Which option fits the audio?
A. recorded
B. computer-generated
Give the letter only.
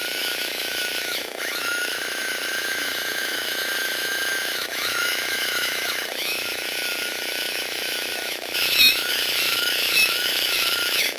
B